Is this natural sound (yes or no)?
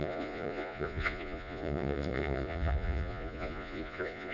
no